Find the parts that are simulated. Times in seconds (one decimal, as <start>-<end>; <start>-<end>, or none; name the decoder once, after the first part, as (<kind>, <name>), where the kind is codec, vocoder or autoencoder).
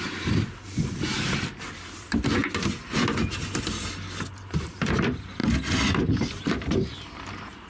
0.0-2.4 (vocoder, BigVGAN v2); 4.3-5.4; 5.9-7.7